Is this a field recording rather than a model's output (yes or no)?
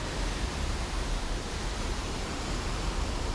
no